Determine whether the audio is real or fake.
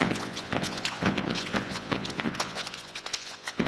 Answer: fake